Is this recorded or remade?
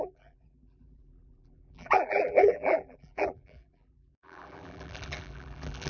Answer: remade